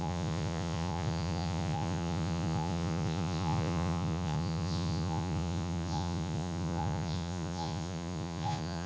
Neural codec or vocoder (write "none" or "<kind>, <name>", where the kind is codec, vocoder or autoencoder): vocoder, Vocos